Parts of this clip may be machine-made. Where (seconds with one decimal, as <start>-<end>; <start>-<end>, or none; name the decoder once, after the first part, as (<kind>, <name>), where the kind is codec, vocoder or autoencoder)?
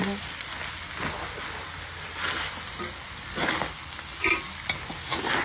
none